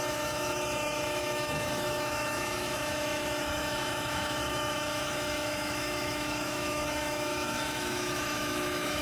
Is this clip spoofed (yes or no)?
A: yes